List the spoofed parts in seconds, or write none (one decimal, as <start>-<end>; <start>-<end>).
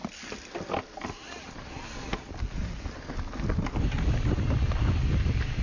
none